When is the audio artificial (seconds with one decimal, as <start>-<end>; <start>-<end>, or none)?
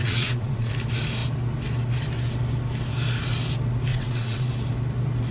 0.0-0.7; 3.9-4.5